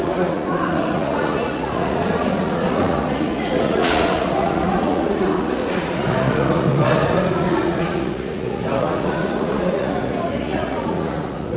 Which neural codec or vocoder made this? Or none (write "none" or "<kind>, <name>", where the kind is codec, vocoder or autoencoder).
vocoder, Vocos